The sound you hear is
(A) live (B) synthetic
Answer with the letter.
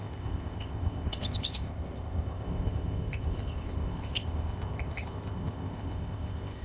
B